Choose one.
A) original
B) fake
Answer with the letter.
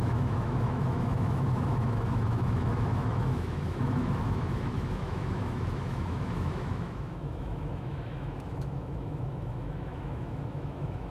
B